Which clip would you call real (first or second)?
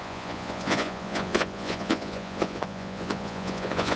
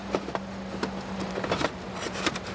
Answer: second